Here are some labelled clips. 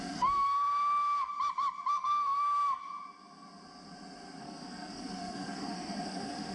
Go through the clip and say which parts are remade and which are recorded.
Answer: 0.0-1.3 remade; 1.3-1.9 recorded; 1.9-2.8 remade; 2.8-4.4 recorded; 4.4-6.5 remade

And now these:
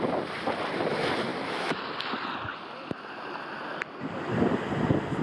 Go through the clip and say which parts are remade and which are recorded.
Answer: 0.0-1.3 recorded; 1.3-1.8 remade; 1.8-5.2 recorded

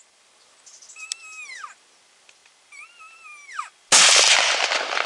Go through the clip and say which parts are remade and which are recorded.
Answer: 0.0-5.1 recorded

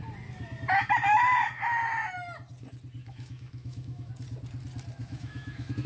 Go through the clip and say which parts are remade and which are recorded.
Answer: 0.0-3.0 recorded; 3.0-4.1 remade; 4.1-5.0 recorded; 5.0-5.9 remade

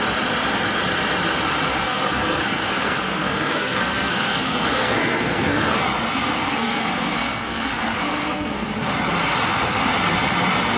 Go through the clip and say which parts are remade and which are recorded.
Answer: 0.0-1.7 recorded; 1.7-5.8 remade; 5.8-6.5 recorded; 6.5-8.7 remade; 8.7-10.8 recorded

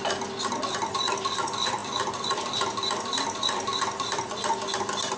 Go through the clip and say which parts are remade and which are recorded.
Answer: 0.0-5.2 recorded